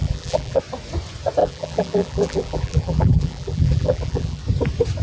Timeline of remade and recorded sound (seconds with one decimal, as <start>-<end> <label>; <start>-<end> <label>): 0.0-0.6 remade; 0.6-1.4 recorded; 1.4-4.4 remade; 4.4-5.0 recorded